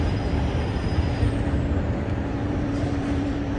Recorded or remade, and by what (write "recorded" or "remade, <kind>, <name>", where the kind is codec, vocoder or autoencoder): remade, vocoder, BigVGAN v2